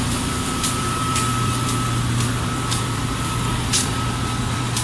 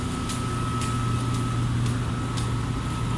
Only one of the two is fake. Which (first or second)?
first